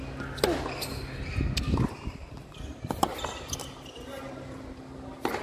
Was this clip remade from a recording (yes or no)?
no